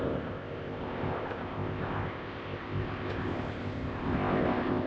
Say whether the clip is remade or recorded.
remade